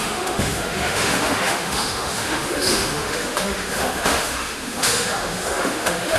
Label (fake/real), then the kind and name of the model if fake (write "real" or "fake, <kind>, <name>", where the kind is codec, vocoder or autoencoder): fake, autoencoder, DAC-VAE